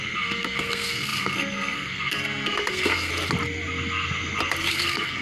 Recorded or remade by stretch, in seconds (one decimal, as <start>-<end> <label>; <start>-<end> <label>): 0.0-3.1 remade; 3.1-4.7 recorded; 4.7-5.2 remade